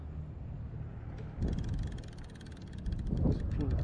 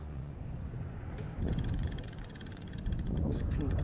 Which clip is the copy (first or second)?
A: second